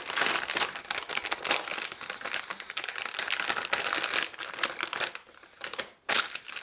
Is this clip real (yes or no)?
yes